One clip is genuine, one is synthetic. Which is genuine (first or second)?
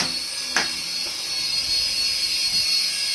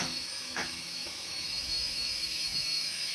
first